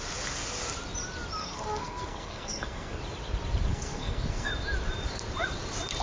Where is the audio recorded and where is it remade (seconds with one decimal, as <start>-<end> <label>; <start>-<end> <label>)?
0.0-1.4 recorded; 1.4-3.0 remade; 3.0-3.7 recorded; 3.7-4.5 remade; 4.5-6.0 recorded